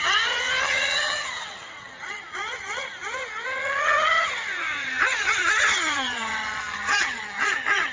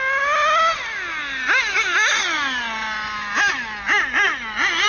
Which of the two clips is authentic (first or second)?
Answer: second